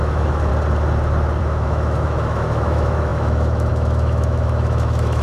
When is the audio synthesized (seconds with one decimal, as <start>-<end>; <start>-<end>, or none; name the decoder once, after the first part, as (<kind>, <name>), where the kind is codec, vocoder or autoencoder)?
0.0-0.5 (autoencoder, DAC-VAE); 1.4-5.2